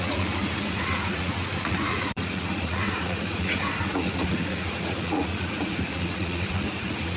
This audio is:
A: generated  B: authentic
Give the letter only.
A